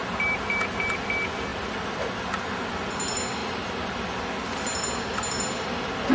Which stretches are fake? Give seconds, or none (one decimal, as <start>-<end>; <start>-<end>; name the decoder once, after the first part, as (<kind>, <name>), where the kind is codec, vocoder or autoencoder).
1.5-2.3 (vocoder, BigVGAN v2); 3.4-4.1